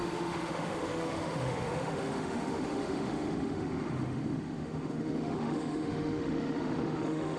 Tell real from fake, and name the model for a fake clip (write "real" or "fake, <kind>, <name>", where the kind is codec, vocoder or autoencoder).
fake, autoencoder, DAC-VAE